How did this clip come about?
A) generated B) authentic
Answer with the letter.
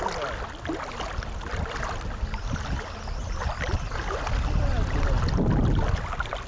B